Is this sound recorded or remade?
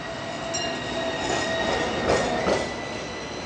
recorded